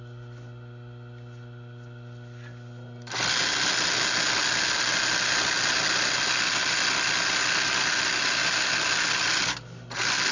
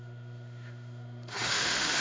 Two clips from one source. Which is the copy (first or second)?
second